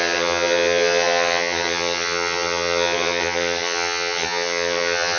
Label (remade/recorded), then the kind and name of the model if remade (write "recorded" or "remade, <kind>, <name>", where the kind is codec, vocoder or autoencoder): remade, vocoder, HiFi-GAN